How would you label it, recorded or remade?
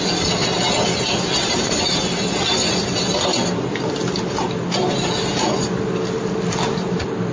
recorded